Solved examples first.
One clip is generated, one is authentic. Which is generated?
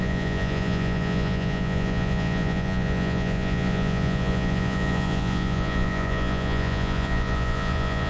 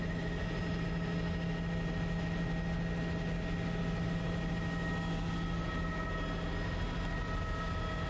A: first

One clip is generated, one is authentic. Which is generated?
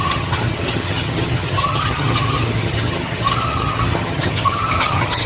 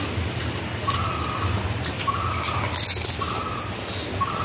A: first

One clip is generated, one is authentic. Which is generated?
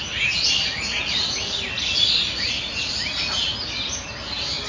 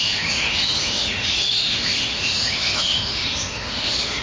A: second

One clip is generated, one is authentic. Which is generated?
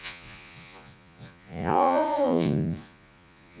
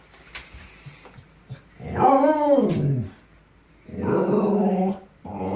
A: first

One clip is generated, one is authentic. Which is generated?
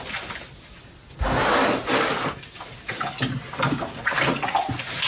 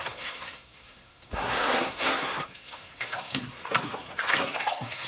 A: second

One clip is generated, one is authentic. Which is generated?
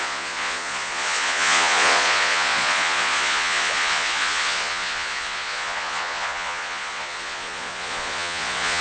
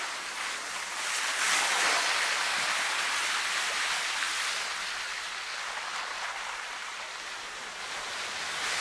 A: first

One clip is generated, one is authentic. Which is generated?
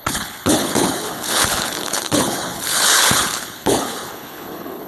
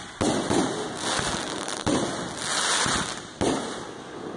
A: first